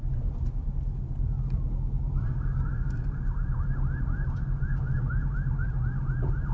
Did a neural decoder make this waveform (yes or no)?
yes